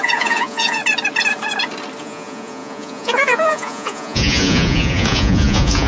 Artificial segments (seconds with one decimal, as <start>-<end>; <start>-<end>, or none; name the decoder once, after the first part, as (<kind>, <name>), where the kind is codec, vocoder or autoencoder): 0.0-0.8 (vocoder, Vocos); 2.0-5.9

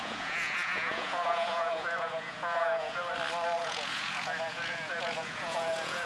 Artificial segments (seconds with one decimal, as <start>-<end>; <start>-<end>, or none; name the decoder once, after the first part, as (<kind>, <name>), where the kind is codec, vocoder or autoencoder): 0.0-3.0 (vocoder, Vocos); 3.6-6.1

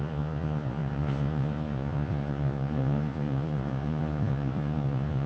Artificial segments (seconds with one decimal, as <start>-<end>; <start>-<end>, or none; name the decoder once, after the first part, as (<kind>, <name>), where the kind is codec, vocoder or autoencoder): 0.0-5.3 (vocoder, Vocos)

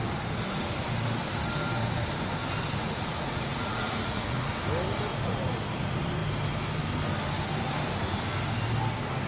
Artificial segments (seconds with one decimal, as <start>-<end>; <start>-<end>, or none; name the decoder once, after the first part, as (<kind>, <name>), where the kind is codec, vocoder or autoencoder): 2.8-4.5 (vocoder, Vocos); 5.1-5.6

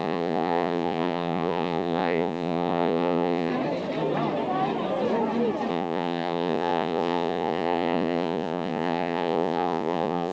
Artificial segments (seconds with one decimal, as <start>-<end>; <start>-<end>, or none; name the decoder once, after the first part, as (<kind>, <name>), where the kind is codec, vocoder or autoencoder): 0.0-3.5 (vocoder, Vocos); 5.7-10.3

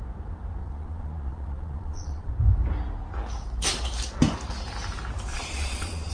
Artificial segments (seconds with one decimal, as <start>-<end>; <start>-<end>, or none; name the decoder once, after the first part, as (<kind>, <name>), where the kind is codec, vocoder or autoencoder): 0.6-2.3 (vocoder, Vocos); 5.3-6.1

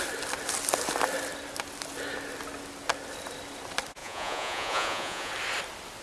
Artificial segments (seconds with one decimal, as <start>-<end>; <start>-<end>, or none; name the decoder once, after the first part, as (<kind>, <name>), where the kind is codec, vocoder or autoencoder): 4.0-5.3 (vocoder, Vocos)

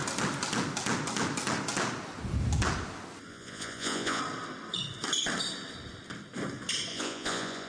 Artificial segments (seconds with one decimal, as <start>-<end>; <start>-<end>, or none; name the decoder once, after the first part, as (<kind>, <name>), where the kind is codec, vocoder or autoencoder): 3.3-4.2 (vocoder, Vocos); 6.9-7.7